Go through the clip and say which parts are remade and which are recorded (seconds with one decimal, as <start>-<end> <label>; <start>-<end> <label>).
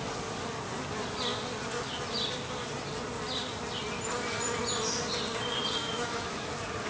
0.0-5.8 recorded; 5.8-6.5 remade; 6.5-6.9 recorded